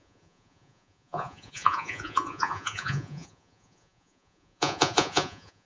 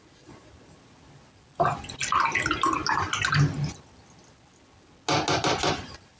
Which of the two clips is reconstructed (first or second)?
first